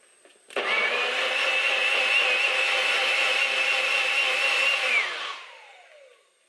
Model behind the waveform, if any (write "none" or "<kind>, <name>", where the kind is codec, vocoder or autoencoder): none